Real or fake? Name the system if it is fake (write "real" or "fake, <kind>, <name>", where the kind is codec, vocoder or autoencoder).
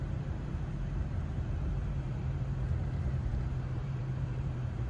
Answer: fake, vocoder, BigVGAN v2